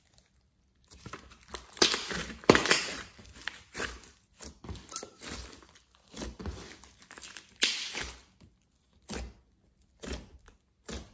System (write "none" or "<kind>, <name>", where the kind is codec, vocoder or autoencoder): none